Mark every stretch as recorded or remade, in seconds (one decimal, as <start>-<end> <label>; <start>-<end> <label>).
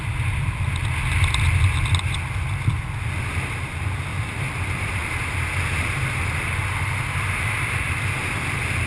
0.0-8.9 recorded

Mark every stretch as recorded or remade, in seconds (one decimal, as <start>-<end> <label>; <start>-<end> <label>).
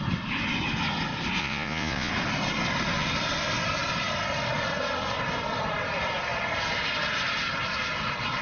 0.0-1.4 recorded; 1.4-2.1 remade; 2.1-8.4 recorded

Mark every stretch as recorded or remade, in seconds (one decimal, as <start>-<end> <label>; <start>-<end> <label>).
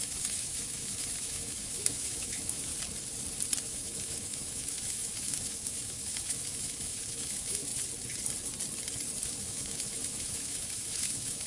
0.0-2.7 remade; 2.7-3.6 recorded; 3.6-7.7 remade; 7.7-9.2 recorded; 9.2-11.5 remade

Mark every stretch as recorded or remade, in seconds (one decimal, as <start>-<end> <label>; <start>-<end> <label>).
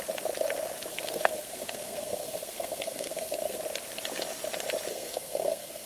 0.0-0.9 recorded; 0.9-3.6 remade; 3.6-4.9 recorded; 4.9-5.9 remade